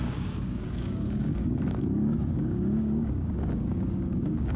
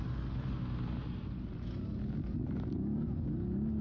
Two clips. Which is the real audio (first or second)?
second